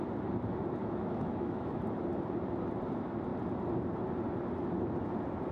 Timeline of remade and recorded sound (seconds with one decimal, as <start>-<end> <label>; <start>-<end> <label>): 0.0-0.8 recorded; 0.8-1.8 remade; 1.8-5.5 recorded